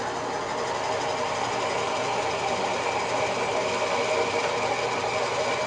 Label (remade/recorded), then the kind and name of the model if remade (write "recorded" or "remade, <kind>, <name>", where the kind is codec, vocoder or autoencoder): recorded